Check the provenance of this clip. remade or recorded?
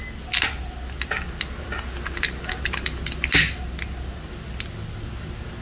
recorded